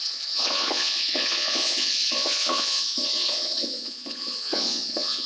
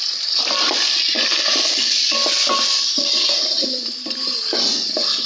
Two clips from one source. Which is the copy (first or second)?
first